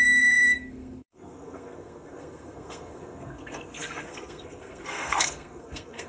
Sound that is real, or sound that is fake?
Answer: fake